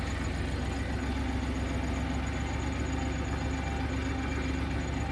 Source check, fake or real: real